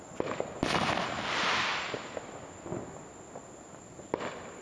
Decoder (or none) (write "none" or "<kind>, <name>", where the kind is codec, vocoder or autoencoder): none